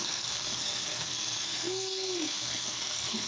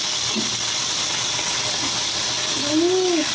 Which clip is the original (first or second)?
second